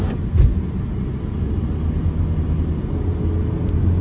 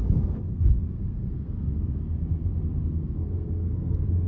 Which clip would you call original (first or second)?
first